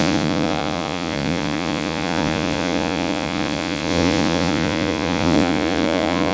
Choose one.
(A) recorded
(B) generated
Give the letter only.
B